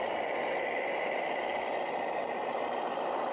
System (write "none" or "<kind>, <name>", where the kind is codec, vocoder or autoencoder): none